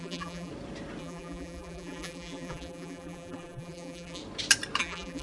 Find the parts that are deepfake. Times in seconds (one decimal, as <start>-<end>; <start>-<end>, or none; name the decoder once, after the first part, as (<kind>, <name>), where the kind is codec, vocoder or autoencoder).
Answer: 0.0-0.5 (vocoder, BigVGAN v2); 1.0-4.2; 4.8-5.2